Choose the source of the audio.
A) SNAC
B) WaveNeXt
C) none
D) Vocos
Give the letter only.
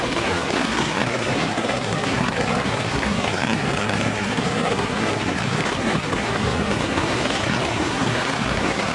A